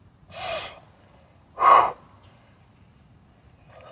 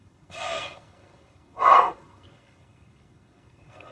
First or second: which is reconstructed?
second